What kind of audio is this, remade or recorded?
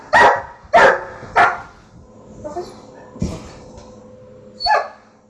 recorded